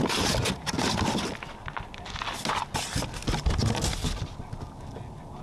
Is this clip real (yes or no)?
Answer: yes